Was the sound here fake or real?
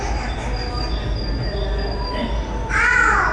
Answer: real